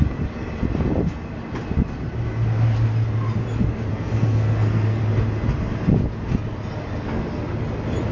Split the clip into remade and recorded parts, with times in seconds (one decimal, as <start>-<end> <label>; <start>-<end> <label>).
0.0-3.9 recorded; 3.9-5.0 remade; 5.0-8.1 recorded